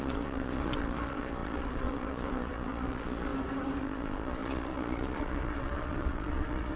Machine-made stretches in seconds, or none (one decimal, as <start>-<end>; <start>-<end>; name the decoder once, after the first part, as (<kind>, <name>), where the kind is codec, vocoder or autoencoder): 0.0-3.3 (vocoder, Vocos); 3.8-6.8